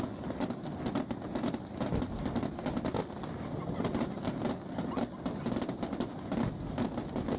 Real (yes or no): yes